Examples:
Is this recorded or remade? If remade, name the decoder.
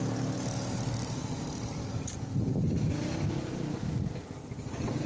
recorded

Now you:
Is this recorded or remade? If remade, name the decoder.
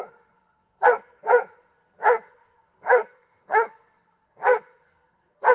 remade, codec, SNAC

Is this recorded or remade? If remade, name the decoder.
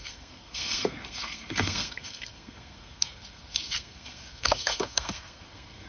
remade, codec, SNAC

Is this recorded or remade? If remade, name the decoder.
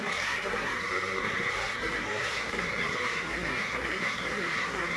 remade, codec, SNAC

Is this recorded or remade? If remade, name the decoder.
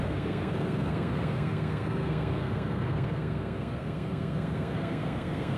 remade, codec, SNAC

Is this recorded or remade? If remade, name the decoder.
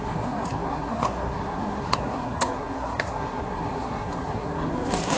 remade, codec, SNAC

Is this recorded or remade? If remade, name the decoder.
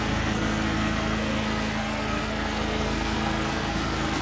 remade, codec, SNAC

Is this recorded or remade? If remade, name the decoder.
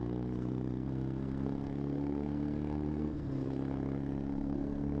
remade, codec, SNAC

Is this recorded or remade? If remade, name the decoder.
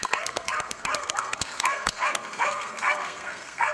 remade, codec, SNAC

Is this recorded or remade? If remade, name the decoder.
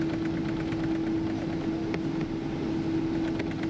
recorded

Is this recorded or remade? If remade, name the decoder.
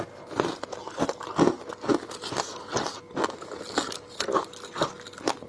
recorded